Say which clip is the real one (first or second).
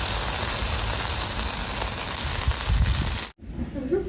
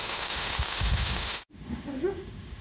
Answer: first